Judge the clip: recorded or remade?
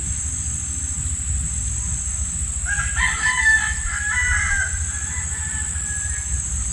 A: recorded